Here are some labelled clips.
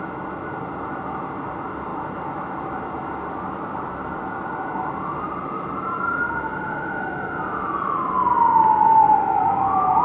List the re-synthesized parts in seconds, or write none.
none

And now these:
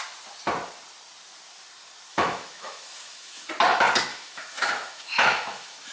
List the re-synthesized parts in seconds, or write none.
2.1-3.5 (autoencoder, DAC-VAE); 4.1-5.9

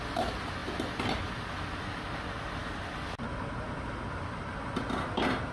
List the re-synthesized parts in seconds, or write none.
none